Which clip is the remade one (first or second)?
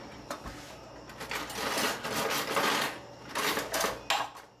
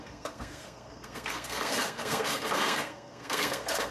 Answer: second